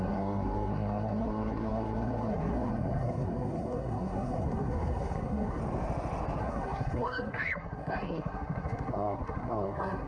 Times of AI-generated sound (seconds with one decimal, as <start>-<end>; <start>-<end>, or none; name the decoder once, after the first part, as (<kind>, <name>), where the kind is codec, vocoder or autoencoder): 0.0-5.6 (codec, SNAC); 6.4-10.1

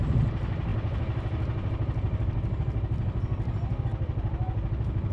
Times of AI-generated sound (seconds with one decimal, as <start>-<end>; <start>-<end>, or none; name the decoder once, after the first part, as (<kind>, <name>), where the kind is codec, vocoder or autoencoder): none